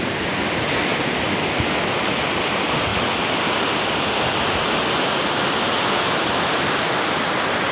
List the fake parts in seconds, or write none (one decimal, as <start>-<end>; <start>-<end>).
none